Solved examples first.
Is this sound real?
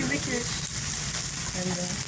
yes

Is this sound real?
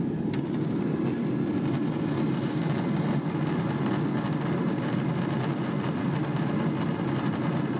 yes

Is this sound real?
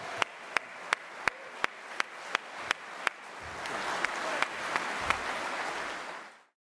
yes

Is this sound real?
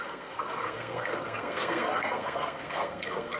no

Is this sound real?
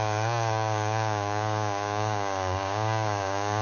no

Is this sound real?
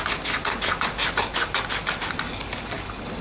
yes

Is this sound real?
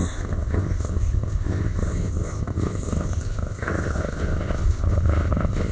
no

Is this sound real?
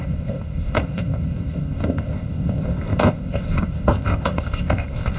no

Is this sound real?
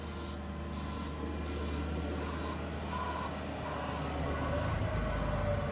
yes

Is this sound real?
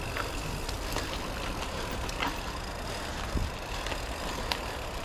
yes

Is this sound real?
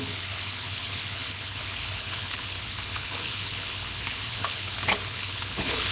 no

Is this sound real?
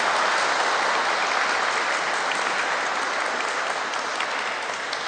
yes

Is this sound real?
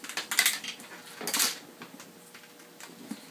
yes